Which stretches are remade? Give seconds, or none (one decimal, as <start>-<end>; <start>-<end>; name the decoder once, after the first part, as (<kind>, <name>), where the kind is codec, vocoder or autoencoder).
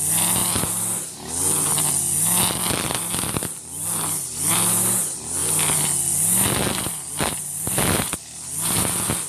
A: none